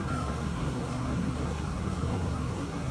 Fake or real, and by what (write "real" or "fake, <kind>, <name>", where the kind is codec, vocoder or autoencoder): fake, codec, SNAC